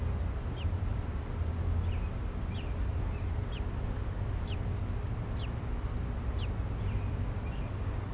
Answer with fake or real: real